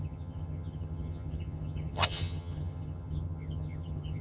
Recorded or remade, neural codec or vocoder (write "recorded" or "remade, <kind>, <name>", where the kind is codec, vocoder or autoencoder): remade, vocoder, HiFi-GAN